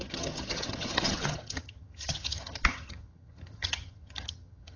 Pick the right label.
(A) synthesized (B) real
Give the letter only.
A